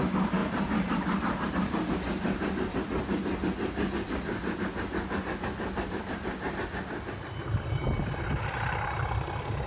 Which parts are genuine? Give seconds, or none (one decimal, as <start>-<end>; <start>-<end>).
0.0-0.4; 1.5-9.7